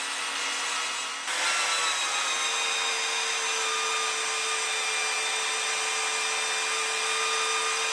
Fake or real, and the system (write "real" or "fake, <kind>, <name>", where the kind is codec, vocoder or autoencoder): real